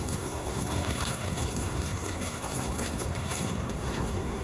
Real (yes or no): no